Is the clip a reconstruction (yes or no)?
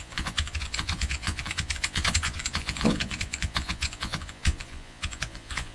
yes